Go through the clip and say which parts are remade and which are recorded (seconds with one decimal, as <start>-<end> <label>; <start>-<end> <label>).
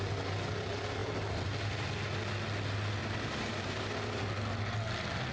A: 0.0-3.0 recorded; 3.0-3.9 remade; 3.9-5.3 recorded